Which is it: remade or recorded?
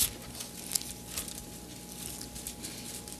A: recorded